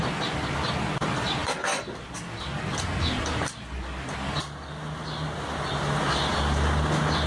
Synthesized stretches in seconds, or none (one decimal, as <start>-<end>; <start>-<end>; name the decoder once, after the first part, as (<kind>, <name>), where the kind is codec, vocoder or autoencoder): none